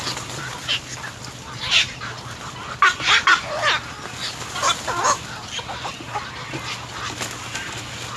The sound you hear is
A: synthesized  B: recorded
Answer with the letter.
B